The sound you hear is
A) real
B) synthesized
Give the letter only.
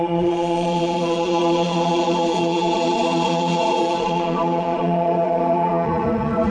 B